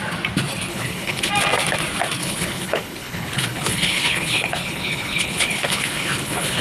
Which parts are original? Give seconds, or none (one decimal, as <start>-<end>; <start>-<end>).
0.0-0.7; 1.3-2.2

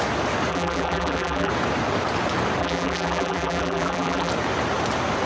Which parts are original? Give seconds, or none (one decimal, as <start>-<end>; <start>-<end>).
0.0-0.5; 1.5-2.6; 4.3-5.3

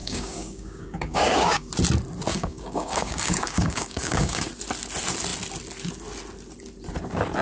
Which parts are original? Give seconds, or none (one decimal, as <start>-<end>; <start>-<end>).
1.7-2.3; 4.5-7.4

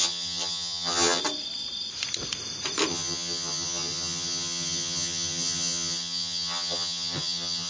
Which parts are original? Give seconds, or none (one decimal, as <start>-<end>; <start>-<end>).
1.2-2.9

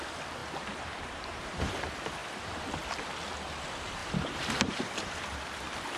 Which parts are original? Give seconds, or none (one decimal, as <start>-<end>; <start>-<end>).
0.0-0.4; 1.7-4.0; 5.1-6.0

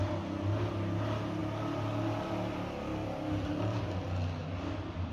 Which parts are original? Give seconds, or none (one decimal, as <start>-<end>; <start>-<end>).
0.0-5.1

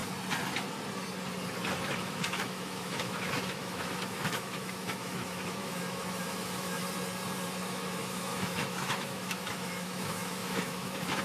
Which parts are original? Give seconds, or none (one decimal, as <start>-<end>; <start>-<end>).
0.0-1.9; 6.8-7.7